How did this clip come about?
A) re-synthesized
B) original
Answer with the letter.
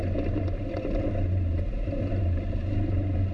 A